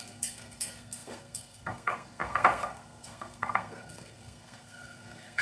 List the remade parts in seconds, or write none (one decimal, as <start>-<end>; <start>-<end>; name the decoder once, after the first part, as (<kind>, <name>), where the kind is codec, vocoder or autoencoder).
0.0-5.4 (codec, SNAC)